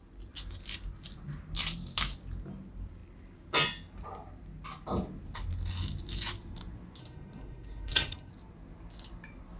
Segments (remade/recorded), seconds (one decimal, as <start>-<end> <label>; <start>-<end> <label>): 0.0-7.0 recorded; 7.0-8.3 remade; 8.3-9.6 recorded